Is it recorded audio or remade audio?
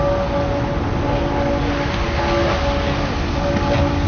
recorded